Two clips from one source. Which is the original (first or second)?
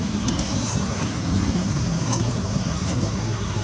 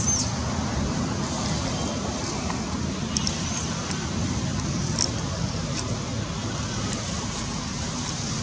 second